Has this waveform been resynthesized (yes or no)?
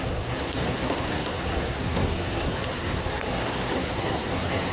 yes